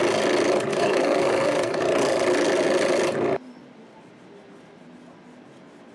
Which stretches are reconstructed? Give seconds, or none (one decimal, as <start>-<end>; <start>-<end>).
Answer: 0.7-1.8